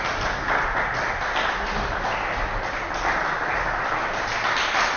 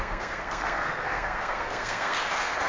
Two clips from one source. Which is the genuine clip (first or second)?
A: first